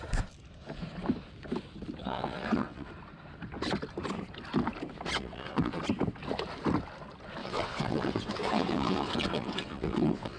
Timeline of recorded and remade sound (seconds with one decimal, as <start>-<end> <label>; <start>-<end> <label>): 0.0-2.0 recorded; 2.0-2.9 remade; 2.9-5.2 recorded; 5.2-5.8 remade; 5.8-7.4 recorded; 7.4-10.4 remade